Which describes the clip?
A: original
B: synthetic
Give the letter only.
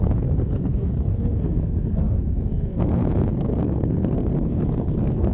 B